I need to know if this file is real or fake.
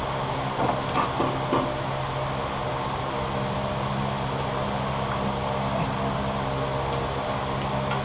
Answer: real